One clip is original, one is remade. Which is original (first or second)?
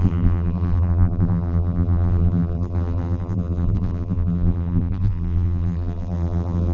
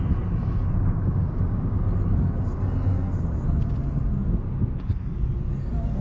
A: second